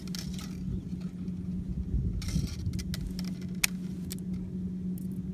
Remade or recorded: recorded